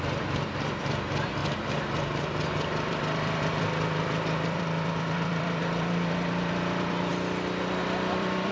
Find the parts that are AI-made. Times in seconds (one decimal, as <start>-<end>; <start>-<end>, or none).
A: 0.0-7.1; 7.8-8.5